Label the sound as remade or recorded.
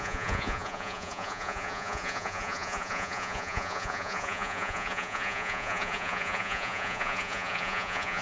remade